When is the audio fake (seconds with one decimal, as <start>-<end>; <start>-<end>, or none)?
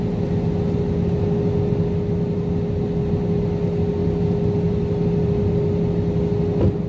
none